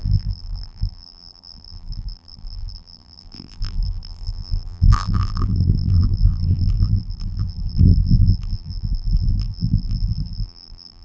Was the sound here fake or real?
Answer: fake